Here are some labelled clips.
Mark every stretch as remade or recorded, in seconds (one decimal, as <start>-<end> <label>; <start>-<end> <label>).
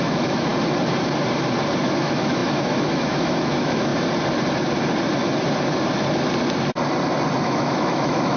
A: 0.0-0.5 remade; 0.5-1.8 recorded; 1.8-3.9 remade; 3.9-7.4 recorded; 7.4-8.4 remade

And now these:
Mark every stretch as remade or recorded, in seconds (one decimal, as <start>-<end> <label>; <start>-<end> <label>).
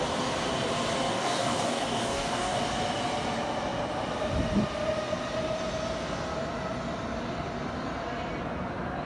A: 0.0-1.1 recorded; 1.1-2.6 remade; 2.6-9.1 recorded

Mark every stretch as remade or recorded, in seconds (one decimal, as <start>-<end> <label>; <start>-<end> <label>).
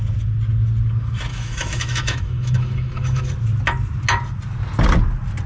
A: 0.0-1.3 recorded; 1.3-3.3 remade; 3.3-5.5 recorded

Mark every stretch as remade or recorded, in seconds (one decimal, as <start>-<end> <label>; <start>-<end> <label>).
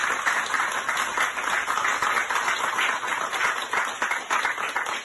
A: 0.0-5.0 recorded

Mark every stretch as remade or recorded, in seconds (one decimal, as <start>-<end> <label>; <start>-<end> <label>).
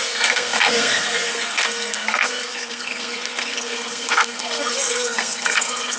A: 0.0-6.0 remade